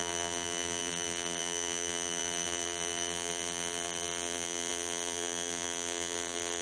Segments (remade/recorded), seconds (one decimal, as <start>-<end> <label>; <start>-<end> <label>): 0.0-6.6 remade